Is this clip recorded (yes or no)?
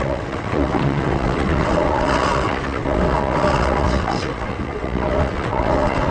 no